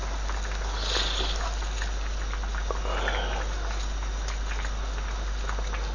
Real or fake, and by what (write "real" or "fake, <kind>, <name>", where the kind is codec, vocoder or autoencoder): real